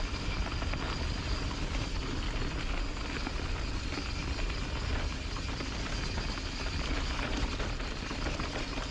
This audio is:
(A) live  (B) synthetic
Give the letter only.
A